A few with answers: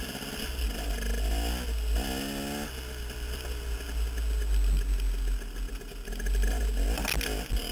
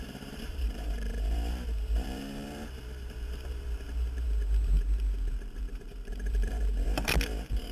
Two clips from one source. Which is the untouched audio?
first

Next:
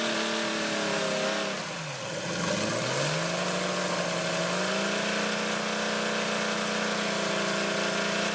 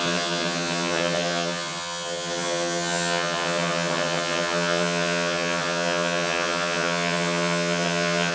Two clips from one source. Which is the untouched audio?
first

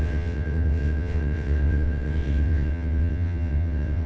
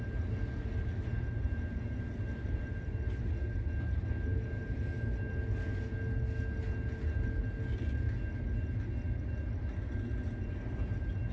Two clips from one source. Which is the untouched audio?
second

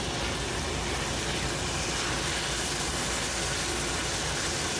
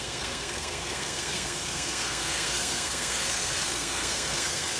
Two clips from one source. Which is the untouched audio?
first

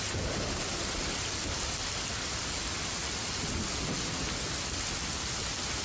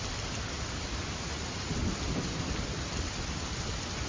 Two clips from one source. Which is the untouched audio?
first